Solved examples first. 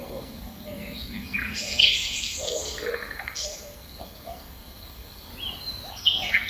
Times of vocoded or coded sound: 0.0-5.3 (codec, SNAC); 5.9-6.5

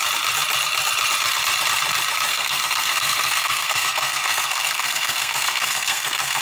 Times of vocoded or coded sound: 2.3-6.4 (codec, SNAC)

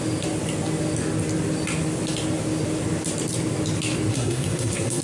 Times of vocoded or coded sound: 4.1-5.0 (codec, SNAC)